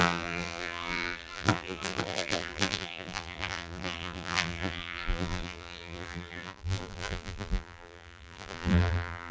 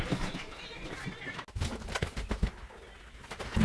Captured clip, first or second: second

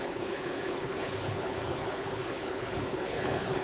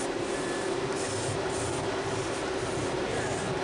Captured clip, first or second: second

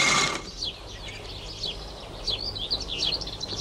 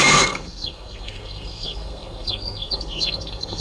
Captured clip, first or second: first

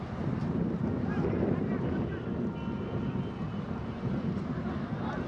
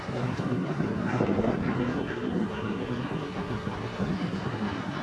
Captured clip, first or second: first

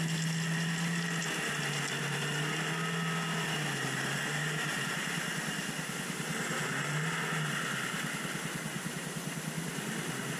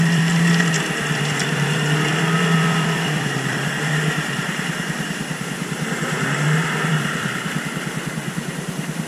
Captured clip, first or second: first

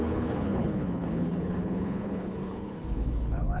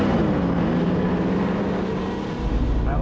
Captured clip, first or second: second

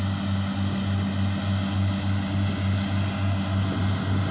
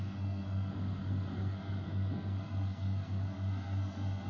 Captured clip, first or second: first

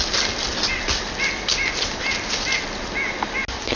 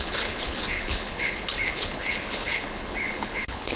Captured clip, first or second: first